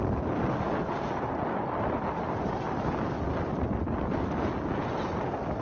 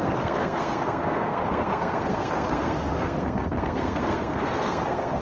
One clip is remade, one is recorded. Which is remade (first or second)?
second